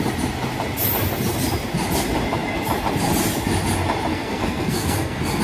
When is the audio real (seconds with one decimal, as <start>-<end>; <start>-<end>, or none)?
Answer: 0.0-4.1